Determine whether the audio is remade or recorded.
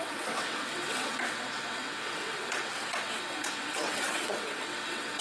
remade